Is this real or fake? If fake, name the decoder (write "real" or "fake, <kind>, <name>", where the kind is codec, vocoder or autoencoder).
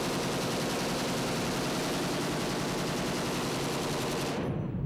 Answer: real